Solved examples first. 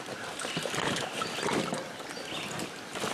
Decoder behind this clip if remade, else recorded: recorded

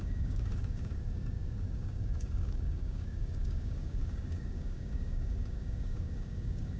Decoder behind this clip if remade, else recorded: remade, codec, DAC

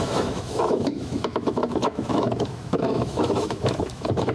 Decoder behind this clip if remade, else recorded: remade, autoencoder, DAC-VAE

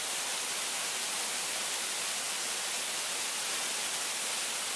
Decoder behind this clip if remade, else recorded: recorded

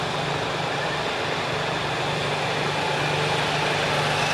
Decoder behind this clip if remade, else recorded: recorded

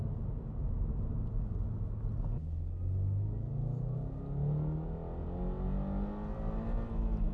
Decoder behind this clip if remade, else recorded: recorded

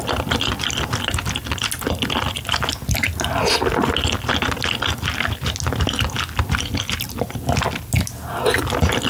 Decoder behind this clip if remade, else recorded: recorded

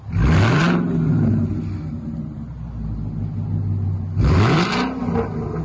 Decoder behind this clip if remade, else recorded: recorded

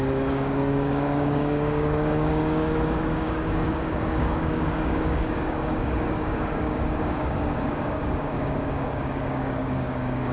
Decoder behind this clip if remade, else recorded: remade, codec, DAC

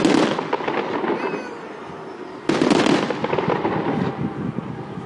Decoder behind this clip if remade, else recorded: recorded